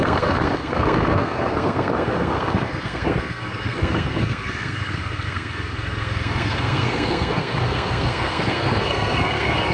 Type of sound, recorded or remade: remade